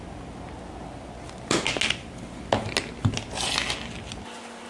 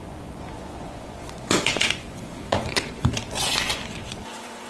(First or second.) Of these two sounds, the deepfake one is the second